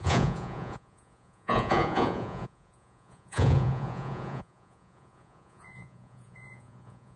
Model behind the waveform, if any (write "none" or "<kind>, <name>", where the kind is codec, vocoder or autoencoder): vocoder, Vocos